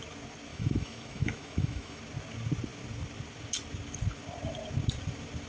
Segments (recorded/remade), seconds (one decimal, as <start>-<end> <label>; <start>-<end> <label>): 0.0-0.5 recorded; 0.5-2.0 remade; 2.0-5.5 recorded